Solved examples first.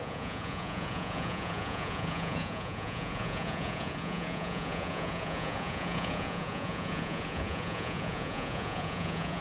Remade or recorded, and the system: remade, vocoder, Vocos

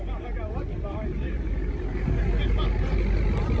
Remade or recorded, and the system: recorded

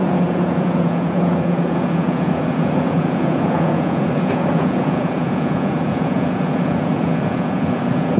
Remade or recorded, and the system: remade, vocoder, Vocos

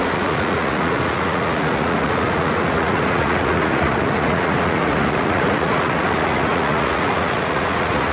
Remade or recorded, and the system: remade, vocoder, Vocos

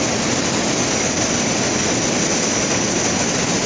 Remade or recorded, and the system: recorded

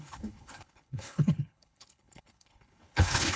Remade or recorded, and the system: remade, codec, HILCodec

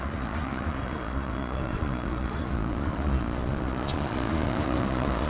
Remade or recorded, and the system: remade, vocoder, Vocos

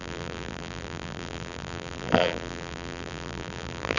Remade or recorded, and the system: remade, vocoder, BigVGAN v2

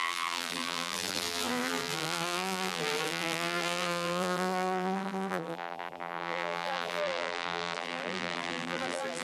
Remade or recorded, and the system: remade, vocoder, BigVGAN v2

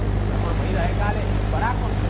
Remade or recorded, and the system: recorded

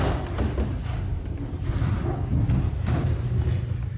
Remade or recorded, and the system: recorded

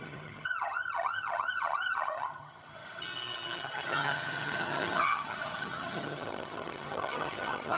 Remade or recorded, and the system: remade, vocoder, HiFi-GAN